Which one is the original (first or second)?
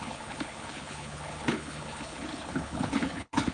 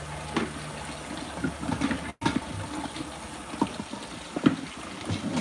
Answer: second